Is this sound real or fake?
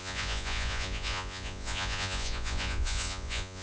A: fake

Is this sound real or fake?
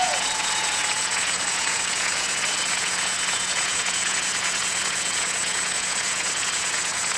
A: fake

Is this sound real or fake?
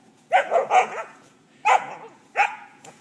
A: fake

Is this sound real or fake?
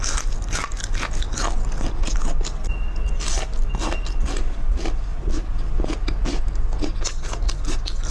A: real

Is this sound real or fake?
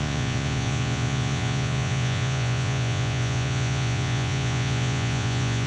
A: fake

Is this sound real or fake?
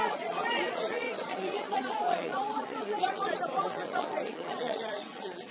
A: fake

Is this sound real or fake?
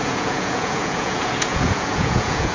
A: fake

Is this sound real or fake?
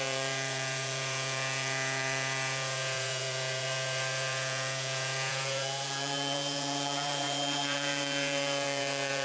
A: fake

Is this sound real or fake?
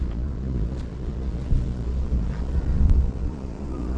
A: fake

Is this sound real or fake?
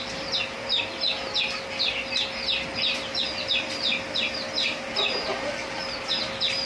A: real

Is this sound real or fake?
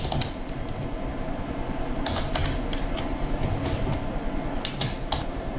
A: real